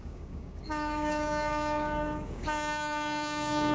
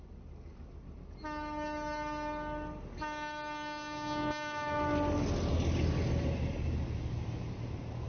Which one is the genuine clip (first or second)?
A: second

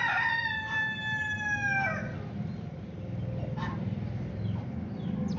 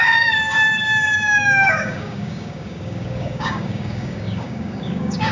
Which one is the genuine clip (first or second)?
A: first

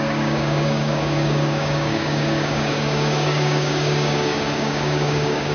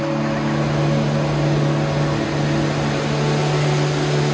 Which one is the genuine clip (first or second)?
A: second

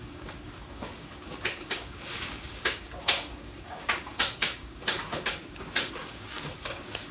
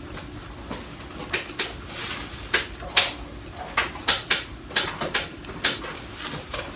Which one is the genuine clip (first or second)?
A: second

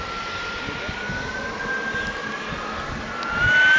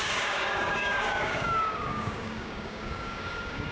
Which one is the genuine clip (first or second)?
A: first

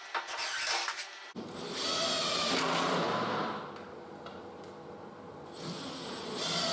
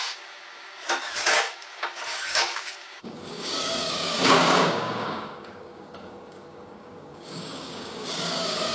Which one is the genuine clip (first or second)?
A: first